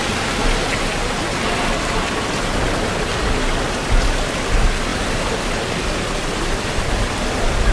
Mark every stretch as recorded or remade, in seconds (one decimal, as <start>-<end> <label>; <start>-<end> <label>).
0.0-7.7 recorded